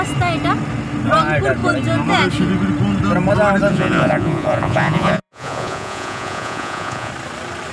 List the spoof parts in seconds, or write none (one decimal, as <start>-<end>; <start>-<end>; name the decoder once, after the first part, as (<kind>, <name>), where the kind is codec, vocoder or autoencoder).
3.7-7.1 (vocoder, Vocos)